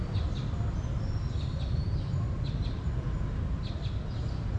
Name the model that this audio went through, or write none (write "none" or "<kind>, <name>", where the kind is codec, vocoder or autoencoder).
none